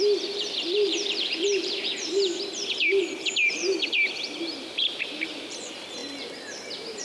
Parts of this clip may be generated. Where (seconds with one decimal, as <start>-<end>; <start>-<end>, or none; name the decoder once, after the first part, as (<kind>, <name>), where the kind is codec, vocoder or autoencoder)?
0.0-6.0 (vocoder, BigVGAN v2)